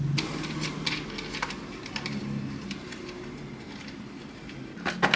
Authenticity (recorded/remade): recorded